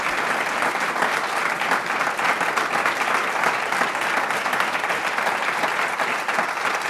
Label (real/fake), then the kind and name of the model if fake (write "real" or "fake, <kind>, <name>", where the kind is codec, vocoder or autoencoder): real